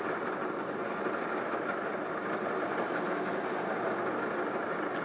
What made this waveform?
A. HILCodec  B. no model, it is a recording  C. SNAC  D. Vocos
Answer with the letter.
B